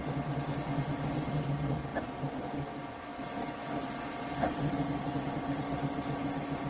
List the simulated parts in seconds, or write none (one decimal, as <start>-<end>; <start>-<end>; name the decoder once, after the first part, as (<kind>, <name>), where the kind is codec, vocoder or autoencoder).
none